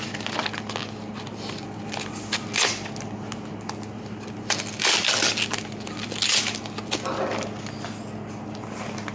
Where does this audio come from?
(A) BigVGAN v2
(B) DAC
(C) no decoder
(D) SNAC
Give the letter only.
C